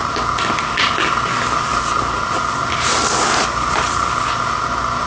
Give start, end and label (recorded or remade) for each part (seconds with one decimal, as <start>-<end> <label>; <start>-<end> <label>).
0.0-5.1 recorded